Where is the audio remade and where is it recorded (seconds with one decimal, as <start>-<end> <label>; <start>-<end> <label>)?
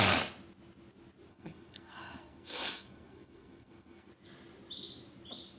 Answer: 0.0-1.3 recorded; 1.3-4.1 remade; 4.1-5.6 recorded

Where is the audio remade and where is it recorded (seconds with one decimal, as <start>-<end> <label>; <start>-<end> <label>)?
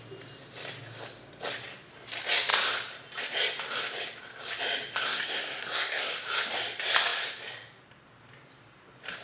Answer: 0.0-5.0 recorded; 5.0-6.1 remade; 6.1-9.2 recorded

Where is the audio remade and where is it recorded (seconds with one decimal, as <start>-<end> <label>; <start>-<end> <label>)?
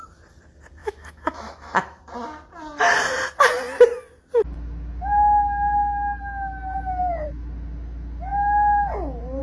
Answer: 0.0-0.8 recorded; 0.8-2.0 remade; 2.0-9.4 recorded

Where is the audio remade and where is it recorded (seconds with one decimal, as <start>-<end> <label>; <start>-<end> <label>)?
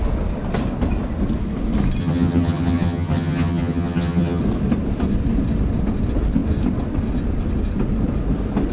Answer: 0.0-2.0 recorded; 2.0-4.4 remade; 4.4-8.7 recorded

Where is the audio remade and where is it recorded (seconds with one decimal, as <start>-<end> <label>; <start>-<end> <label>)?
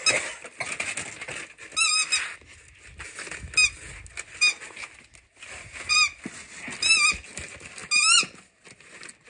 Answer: 0.0-9.3 recorded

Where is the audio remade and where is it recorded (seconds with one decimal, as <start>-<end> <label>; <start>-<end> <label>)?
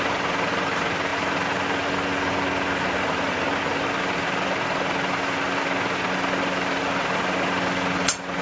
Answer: 0.0-8.4 recorded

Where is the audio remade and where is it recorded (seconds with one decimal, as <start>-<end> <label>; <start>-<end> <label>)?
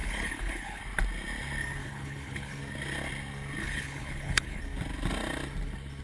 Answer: 0.0-0.8 remade; 0.8-1.8 recorded; 1.8-2.6 remade; 2.6-3.6 recorded; 3.6-4.6 remade; 4.6-6.0 recorded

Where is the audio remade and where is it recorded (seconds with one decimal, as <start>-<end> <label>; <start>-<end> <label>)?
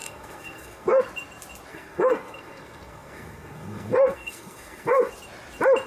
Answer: 0.0-1.0 remade; 1.0-1.7 recorded; 1.7-5.1 remade; 5.1-5.9 recorded